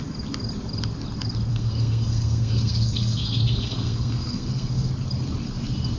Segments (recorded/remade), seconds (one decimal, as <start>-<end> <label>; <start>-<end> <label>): 0.0-1.5 recorded; 1.5-4.9 remade; 4.9-6.0 recorded